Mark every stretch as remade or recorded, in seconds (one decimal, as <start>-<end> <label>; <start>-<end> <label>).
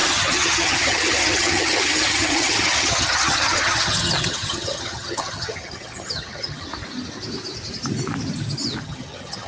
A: 0.0-6.7 remade; 6.7-8.8 recorded; 8.8-9.5 remade